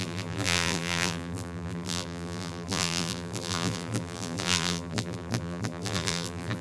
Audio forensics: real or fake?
fake